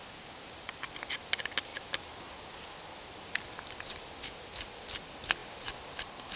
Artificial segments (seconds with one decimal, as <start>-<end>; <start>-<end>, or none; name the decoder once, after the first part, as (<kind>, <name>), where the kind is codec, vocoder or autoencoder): none